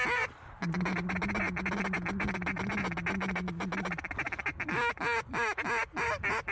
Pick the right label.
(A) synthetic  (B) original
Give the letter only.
B